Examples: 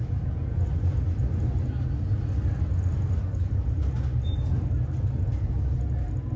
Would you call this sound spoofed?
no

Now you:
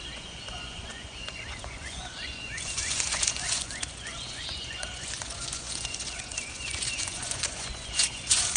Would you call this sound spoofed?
yes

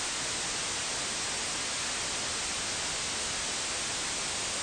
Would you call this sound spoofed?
no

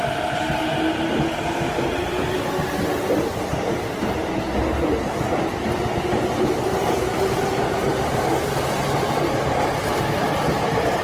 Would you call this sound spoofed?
no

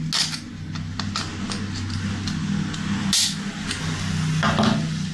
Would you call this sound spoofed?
no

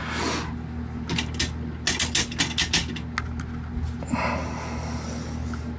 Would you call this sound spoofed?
no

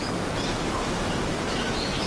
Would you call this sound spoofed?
yes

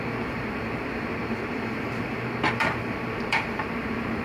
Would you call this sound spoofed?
yes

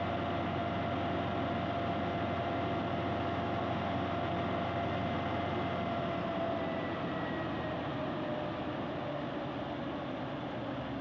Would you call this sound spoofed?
no